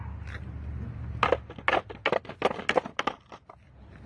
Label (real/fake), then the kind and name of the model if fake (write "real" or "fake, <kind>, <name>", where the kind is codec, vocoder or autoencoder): real